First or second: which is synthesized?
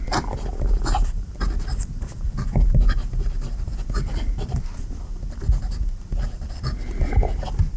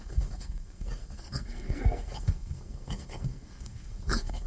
second